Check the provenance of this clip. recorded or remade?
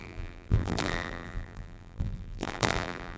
remade